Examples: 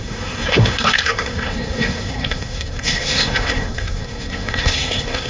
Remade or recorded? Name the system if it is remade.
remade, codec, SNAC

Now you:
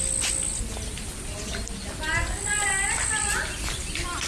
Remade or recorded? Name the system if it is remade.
recorded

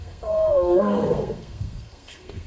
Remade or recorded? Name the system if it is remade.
remade, codec, SNAC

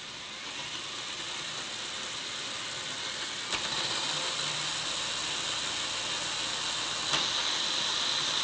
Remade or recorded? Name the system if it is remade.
recorded